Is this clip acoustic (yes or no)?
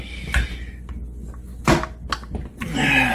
yes